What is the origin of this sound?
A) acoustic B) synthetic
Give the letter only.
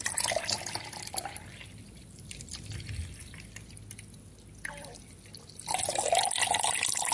A